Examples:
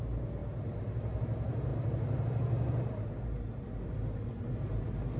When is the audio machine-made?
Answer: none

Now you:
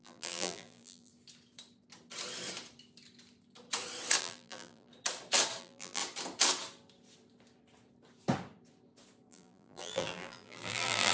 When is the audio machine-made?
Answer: 0.0-1.1 (vocoder, BigVGAN v2); 4.2-4.9; 5.6-6.0; 9.3-11.1

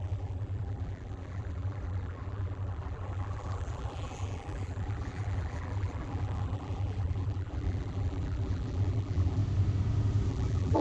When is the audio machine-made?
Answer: 0.0-9.4 (vocoder, BigVGAN v2); 10.3-10.8

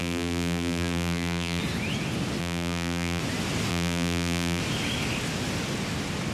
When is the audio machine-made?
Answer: 0.0-1.6 (vocoder, BigVGAN v2); 2.4-3.2; 3.7-4.6

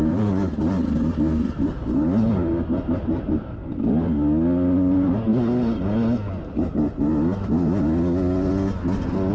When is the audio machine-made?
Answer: 0.0-3.7 (vocoder, BigVGAN v2)